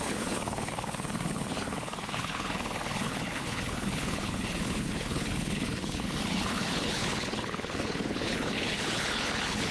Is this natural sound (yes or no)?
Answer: no